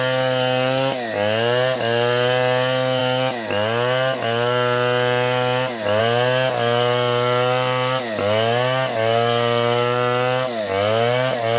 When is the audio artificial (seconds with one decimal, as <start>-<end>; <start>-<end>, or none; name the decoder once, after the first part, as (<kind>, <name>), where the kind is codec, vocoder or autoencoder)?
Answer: none